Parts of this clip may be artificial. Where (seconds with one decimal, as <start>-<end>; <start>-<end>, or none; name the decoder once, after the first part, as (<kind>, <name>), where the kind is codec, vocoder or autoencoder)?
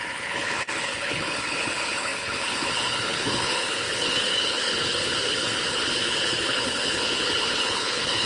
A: 0.0-8.3 (codec, HILCodec)